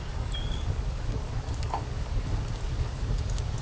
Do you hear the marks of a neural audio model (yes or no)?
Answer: yes